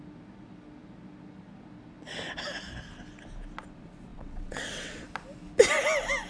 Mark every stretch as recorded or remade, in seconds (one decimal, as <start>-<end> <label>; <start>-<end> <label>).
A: 0.0-4.1 recorded; 4.1-5.0 remade; 5.0-6.3 recorded